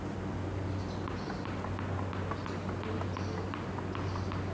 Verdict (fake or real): real